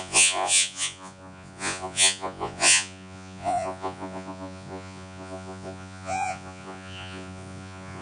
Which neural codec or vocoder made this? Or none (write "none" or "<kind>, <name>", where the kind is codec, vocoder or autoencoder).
vocoder, Vocos